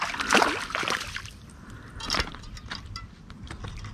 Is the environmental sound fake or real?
real